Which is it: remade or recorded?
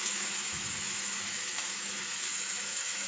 remade